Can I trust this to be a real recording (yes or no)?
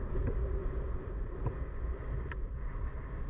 yes